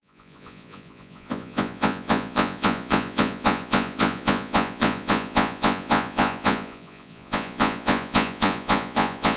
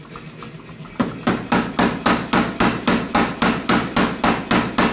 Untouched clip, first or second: second